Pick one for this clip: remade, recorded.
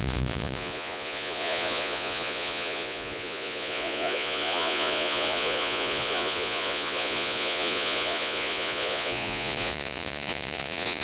remade